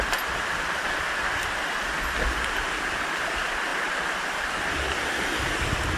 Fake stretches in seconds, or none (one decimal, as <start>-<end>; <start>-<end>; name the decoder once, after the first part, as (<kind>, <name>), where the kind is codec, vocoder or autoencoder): none